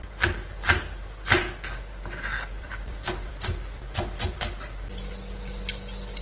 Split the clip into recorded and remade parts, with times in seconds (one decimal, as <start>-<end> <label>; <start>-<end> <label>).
0.0-2.3 recorded; 2.3-4.4 remade; 4.4-6.2 recorded